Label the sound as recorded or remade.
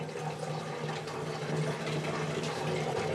recorded